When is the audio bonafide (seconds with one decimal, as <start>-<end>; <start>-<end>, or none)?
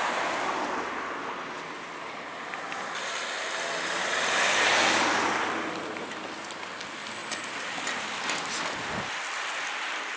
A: 0.0-10.2